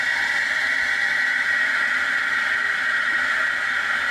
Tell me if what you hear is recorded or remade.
recorded